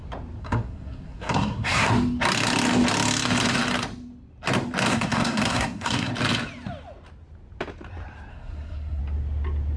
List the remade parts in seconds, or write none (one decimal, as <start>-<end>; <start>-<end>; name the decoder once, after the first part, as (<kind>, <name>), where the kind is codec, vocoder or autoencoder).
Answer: 0.4-1.9 (codec, SNAC); 4.9-6.1; 8.3-9.0